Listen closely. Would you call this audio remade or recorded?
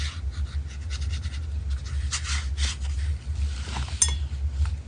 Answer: recorded